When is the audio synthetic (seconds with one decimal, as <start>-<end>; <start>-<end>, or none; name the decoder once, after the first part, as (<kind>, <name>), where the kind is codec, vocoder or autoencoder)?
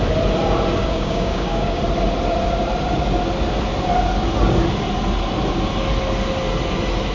0.8-1.8 (codec, DAC)